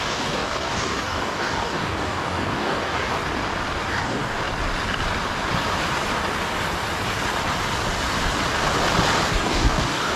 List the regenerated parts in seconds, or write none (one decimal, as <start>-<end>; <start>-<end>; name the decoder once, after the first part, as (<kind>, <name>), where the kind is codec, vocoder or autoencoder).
0.0-3.1 (codec, DAC); 3.9-4.4; 9.3-10.2

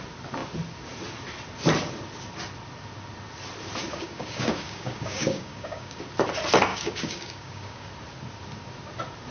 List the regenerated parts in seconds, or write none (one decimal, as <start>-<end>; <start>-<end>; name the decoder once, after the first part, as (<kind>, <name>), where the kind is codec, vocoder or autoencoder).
3.9-6.0 (codec, DAC); 6.7-7.9

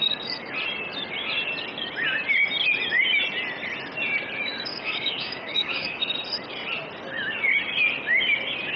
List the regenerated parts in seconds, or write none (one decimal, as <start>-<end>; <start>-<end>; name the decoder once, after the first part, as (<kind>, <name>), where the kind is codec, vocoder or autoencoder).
4.7-6.0 (codec, DAC)

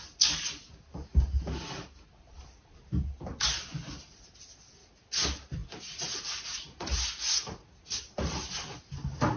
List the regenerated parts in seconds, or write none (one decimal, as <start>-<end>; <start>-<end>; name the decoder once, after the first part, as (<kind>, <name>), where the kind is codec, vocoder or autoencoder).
none

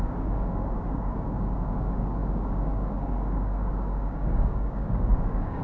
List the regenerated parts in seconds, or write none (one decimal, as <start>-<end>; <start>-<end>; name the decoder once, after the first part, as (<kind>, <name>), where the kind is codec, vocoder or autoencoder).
0.0-5.6 (codec, DAC)

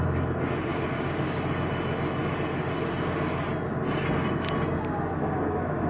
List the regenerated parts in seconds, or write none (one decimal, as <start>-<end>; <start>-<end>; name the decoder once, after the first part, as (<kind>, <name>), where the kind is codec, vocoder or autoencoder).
0.7-1.4 (codec, DAC); 5.2-5.9

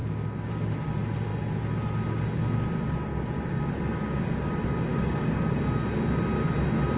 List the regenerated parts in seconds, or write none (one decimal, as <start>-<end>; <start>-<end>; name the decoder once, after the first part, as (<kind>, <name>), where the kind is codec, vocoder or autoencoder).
3.1-3.7 (codec, DAC); 4.9-5.6

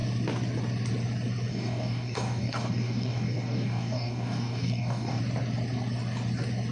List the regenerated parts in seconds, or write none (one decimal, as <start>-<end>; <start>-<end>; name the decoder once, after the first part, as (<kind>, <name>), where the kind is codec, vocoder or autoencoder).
1.5-5.2 (codec, DAC)